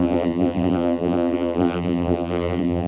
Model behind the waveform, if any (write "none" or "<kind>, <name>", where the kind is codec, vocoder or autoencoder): vocoder, BigVGAN v2